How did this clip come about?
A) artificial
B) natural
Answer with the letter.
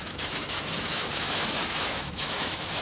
A